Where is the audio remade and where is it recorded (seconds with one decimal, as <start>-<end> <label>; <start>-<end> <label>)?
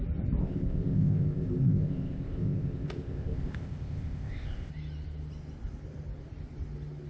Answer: 0.0-0.4 recorded; 0.4-4.7 remade; 4.7-7.1 recorded